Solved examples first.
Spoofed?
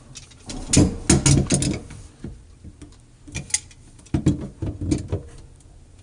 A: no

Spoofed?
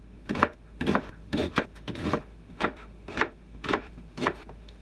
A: yes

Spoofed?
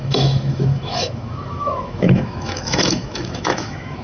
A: yes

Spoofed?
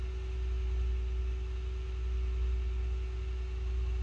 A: no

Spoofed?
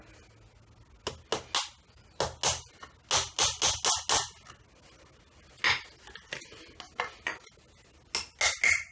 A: no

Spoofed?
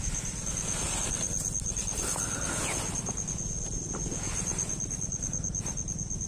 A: no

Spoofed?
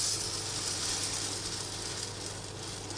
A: no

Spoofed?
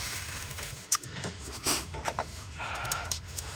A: yes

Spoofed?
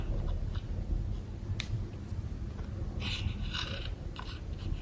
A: no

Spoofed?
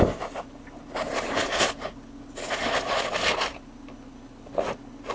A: no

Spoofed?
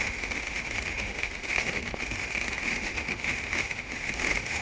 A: yes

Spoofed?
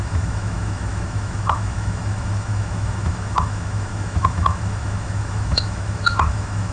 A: yes